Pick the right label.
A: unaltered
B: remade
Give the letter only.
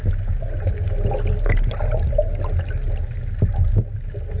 A